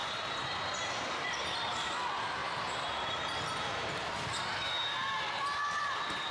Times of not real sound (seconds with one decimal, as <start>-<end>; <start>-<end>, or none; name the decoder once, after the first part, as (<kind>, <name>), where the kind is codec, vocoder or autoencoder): 0.0-1.4 (vocoder, BigVGAN v2); 2.4-4.7